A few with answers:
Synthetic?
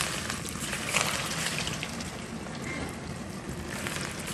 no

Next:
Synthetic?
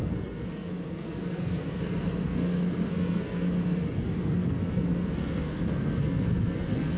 yes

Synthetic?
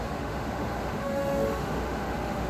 yes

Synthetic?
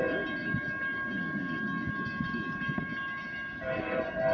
no